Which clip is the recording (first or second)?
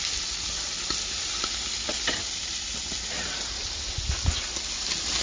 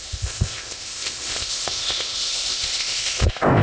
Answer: first